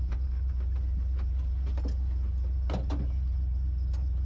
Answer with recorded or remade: recorded